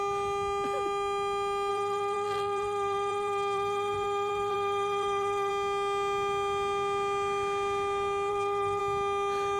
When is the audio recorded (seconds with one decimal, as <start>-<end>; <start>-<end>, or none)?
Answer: 0.0-1.7; 5.5-8.3; 8.8-9.6